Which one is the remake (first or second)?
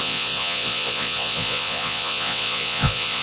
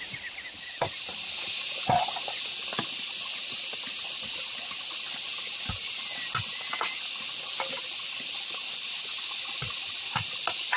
first